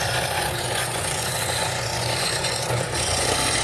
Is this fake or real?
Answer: fake